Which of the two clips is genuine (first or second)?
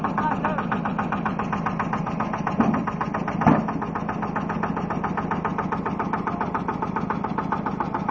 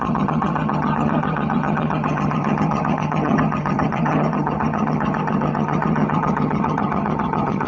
first